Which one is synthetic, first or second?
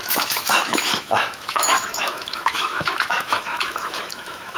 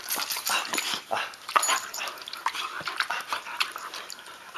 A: first